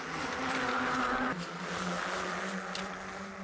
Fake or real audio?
real